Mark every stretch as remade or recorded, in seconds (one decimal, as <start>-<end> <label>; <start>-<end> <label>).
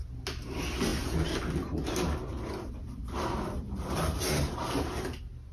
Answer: 0.0-3.0 recorded; 3.0-4.4 remade; 4.4-5.5 recorded